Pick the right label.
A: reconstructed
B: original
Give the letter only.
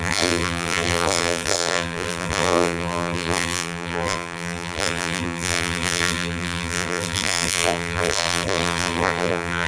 A